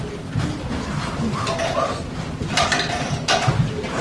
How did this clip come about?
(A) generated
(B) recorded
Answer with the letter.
B